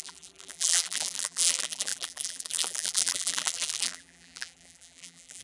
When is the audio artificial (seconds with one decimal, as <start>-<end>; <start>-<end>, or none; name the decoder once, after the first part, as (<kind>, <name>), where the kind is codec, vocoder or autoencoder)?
0.0-5.4 (vocoder, BigVGAN v2)